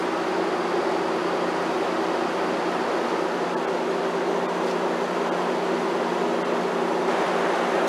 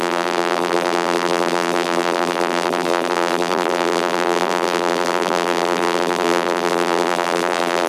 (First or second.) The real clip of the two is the first